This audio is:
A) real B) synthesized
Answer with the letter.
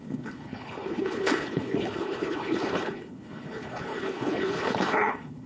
B